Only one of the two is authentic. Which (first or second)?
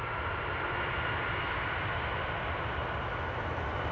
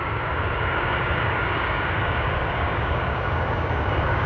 first